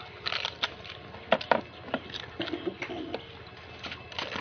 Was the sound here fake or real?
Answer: real